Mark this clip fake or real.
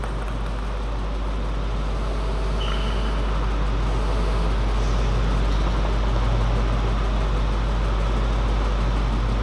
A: real